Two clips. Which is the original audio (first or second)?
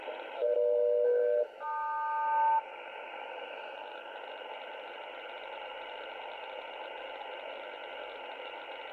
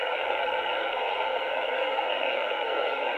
first